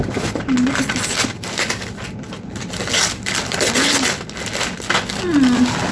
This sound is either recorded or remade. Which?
recorded